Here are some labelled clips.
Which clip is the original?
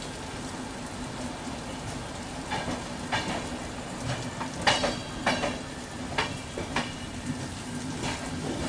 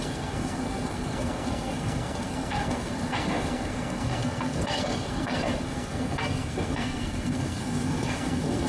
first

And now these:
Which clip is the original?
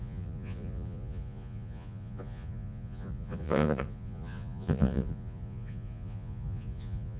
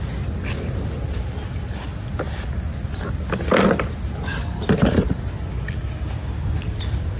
second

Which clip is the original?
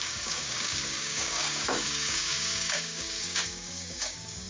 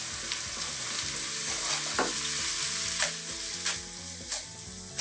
second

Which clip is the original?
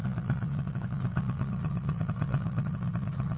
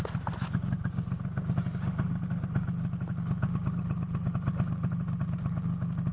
second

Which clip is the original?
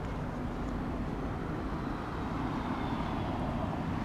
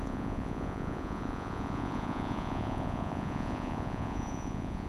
first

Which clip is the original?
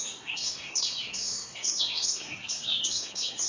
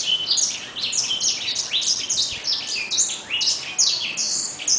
second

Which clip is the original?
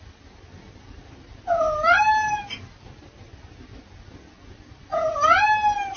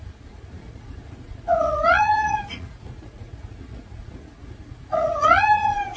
first